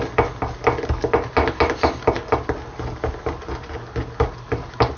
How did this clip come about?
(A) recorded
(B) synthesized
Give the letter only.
A